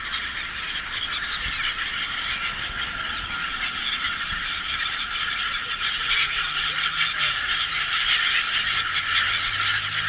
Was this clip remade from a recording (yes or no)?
no